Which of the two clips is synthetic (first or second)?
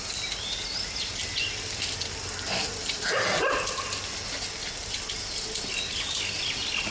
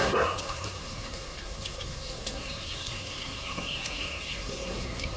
second